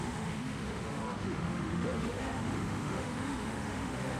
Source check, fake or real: fake